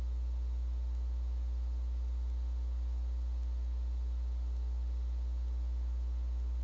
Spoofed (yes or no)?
no